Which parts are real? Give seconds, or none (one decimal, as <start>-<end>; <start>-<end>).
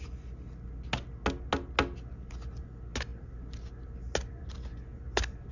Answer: 0.0-5.5